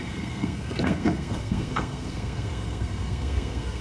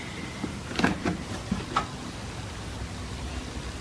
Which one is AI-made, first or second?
first